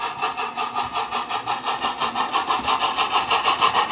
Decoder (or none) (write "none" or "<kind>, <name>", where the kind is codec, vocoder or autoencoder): none